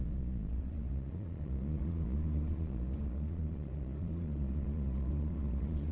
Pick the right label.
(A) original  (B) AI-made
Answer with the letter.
B